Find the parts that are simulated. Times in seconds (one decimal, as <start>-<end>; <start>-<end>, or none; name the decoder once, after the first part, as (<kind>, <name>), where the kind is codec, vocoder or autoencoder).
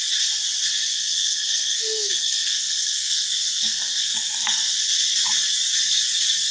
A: 0.9-4.8 (codec, SNAC)